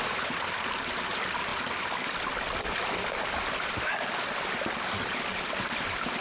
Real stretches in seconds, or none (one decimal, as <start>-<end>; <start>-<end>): 0.0-6.2